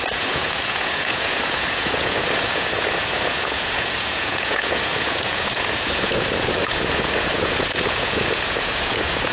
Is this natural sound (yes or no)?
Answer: no